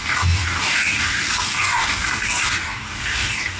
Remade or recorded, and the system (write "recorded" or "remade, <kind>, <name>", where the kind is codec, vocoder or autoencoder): remade, codec, DAC